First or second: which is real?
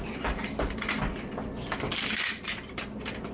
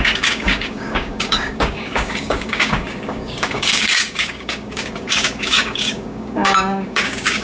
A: first